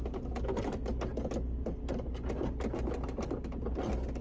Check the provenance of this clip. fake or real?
real